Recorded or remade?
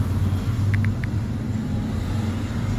recorded